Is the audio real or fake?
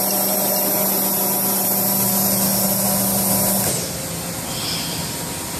real